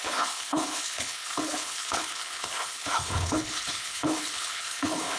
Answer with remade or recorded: remade